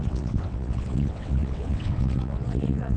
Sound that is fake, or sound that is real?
fake